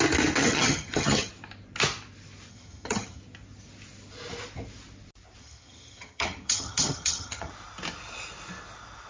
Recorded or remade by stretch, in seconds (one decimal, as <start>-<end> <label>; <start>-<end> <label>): 0.0-0.4 recorded; 0.4-1.3 remade; 1.3-2.5 recorded; 2.5-3.2 remade; 3.2-5.4 recorded; 5.4-7.5 remade; 7.5-9.1 recorded